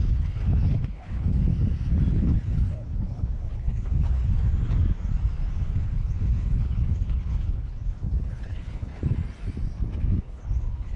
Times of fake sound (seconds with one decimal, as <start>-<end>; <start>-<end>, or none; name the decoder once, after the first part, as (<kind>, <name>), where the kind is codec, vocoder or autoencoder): 0.0-1.5 (codec, HILCodec); 2.1-4.2; 5.5-8.9; 10.2-11.0